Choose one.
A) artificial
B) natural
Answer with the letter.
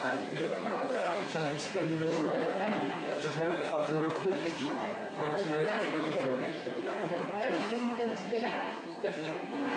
A